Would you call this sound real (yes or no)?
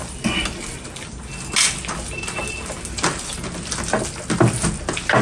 yes